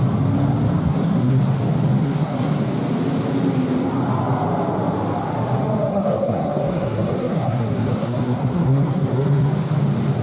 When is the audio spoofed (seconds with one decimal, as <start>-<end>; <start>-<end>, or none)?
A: 0.8-1.4; 2.0-2.6; 5.9-9.5